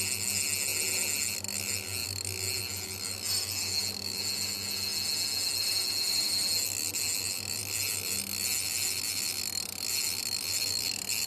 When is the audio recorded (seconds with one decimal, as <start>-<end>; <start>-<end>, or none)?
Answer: 0.0-11.3